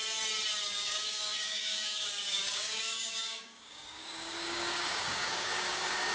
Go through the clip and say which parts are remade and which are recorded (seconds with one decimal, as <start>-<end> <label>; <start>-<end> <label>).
0.0-0.6 recorded; 0.6-6.1 remade